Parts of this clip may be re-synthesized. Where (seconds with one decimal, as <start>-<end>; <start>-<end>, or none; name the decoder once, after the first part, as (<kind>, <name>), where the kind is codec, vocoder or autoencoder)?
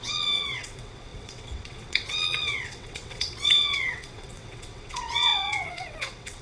0.0-6.4 (vocoder, WaveNeXt)